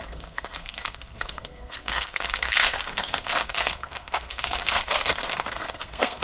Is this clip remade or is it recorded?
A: remade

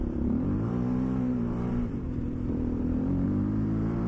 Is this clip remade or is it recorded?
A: remade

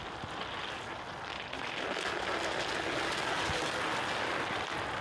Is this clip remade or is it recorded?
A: recorded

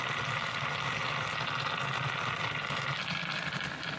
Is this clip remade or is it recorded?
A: recorded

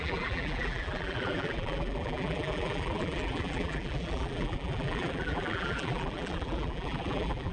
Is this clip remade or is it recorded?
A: remade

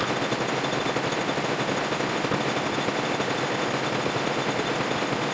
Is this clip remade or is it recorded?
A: recorded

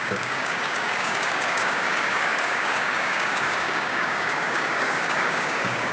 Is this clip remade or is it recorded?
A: remade